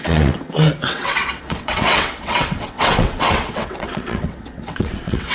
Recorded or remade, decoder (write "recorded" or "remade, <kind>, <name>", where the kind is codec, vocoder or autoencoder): remade, vocoder, WaveNeXt